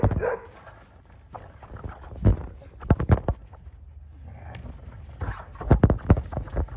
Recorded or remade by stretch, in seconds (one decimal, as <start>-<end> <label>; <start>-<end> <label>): 0.0-6.8 recorded